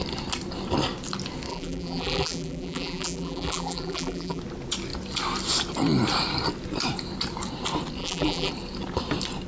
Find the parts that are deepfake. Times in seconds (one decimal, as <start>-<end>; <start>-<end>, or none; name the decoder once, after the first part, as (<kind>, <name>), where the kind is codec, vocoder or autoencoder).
1.5-4.4 (vocoder, BigVGAN v2); 8.0-8.5